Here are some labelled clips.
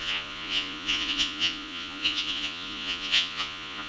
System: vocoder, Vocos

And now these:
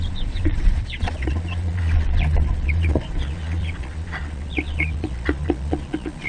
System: vocoder, Vocos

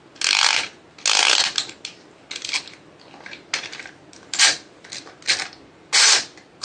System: none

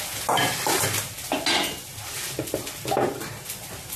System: none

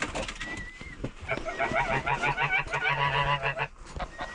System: none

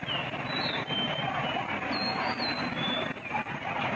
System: none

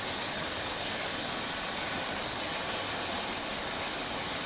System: none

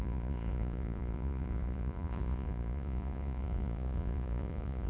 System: vocoder, Vocos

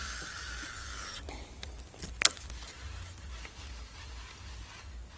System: none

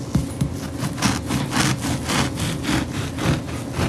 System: none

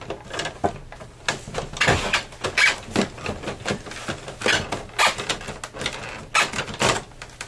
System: none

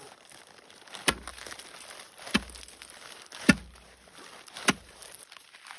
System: none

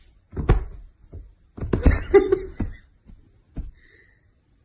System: none